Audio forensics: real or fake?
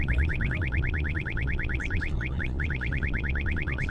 fake